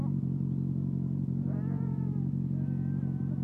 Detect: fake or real real